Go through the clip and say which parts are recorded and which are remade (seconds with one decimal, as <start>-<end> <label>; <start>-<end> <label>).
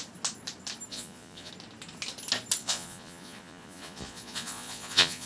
0.0-0.9 recorded; 0.9-1.5 remade; 1.5-2.6 recorded; 2.6-5.3 remade